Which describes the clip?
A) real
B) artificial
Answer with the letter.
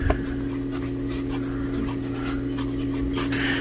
A